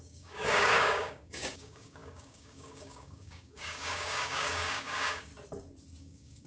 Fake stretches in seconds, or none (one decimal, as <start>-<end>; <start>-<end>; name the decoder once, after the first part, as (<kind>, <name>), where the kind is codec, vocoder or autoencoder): 0.0-5.3 (codec, DAC); 6.0-6.5